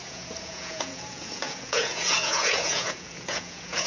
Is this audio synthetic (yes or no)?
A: yes